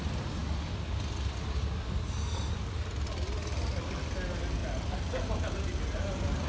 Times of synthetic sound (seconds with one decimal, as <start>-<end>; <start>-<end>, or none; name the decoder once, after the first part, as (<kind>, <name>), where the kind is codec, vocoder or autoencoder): none